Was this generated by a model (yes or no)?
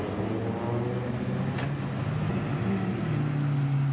no